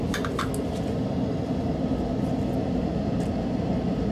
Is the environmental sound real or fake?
real